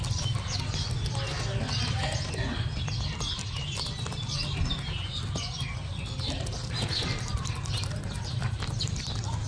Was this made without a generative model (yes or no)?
yes